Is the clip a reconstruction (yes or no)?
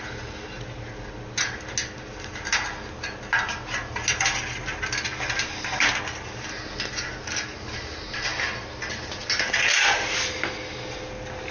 no